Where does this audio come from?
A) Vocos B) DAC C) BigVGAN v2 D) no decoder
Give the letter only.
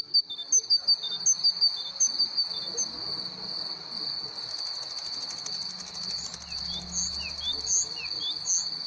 D